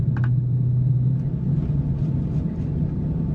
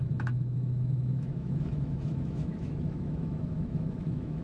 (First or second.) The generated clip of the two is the second